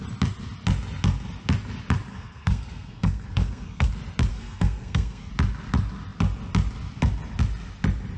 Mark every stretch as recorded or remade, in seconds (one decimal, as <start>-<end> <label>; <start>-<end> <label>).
0.0-2.1 recorded; 2.1-3.9 remade; 3.9-4.3 recorded; 4.3-5.3 remade; 5.3-8.2 recorded